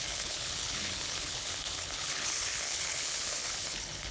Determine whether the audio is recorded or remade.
remade